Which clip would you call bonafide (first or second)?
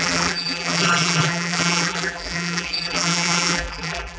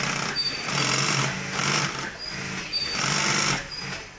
second